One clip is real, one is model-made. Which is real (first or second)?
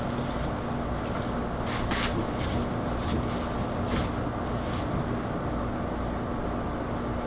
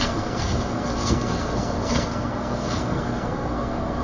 first